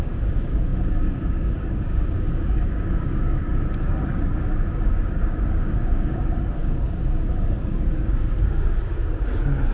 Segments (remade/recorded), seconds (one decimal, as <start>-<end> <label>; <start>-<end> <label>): 0.0-9.7 remade